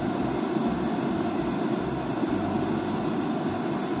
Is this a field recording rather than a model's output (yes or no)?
yes